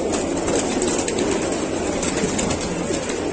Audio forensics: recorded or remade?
recorded